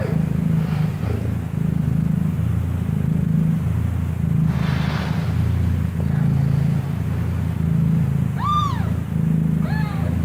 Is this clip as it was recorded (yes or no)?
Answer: yes